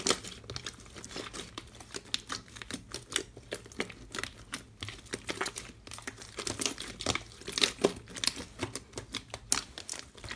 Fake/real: real